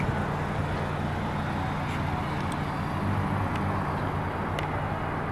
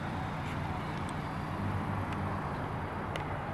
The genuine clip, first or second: first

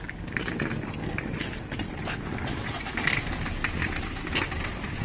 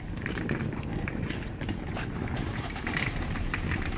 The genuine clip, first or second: first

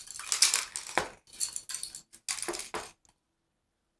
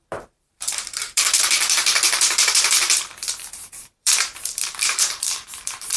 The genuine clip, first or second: first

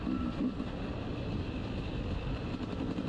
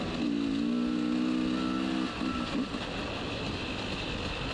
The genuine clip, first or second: second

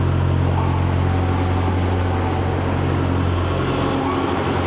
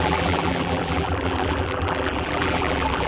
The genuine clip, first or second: first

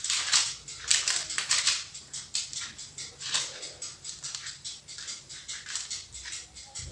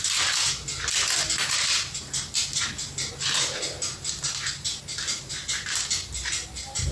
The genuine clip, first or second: second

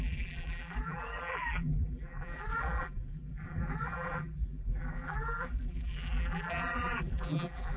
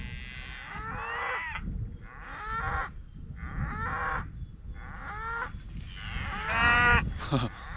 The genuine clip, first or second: second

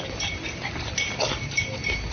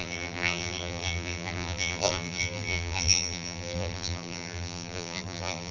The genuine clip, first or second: first